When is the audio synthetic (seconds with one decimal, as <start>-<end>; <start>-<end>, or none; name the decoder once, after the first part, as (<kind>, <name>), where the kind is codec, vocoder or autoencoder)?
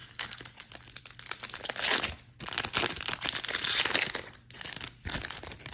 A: none